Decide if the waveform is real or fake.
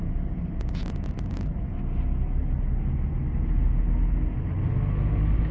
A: real